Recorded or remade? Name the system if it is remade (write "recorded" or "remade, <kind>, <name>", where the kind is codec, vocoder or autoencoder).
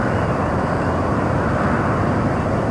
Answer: recorded